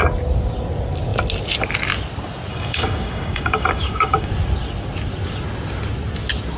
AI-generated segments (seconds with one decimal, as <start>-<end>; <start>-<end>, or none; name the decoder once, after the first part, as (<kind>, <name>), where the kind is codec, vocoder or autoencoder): 2.5-4.3 (codec, DAC)